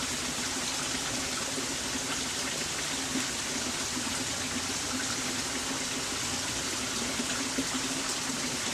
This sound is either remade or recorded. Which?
recorded